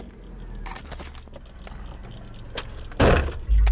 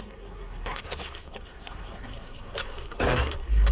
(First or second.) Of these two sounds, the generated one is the second